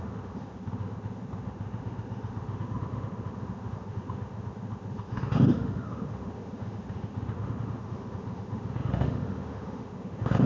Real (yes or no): no